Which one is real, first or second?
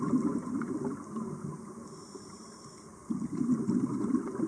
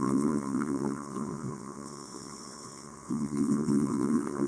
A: first